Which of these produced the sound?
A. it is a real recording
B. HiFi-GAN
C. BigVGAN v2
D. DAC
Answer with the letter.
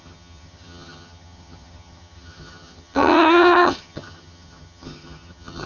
B